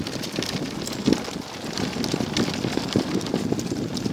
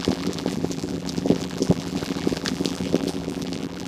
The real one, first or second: first